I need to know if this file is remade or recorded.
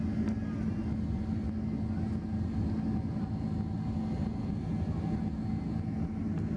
recorded